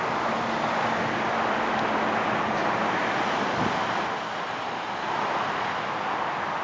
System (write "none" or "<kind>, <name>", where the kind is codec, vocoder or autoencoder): none